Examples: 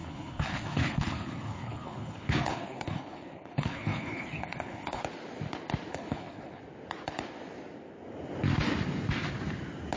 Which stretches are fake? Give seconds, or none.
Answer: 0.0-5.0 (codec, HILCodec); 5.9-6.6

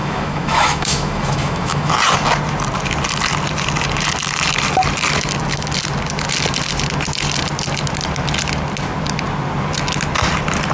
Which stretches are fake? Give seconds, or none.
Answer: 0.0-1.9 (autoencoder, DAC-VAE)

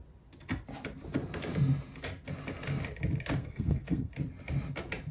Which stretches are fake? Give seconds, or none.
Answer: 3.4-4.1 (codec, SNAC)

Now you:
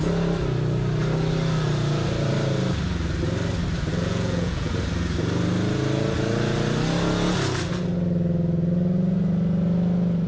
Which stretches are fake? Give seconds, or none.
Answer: 3.9-4.7 (vocoder, Vocos)